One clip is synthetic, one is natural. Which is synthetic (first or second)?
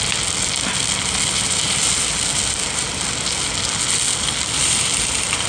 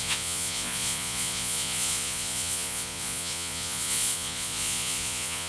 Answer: second